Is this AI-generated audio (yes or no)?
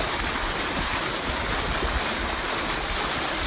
no